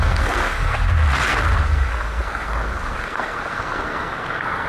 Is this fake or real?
fake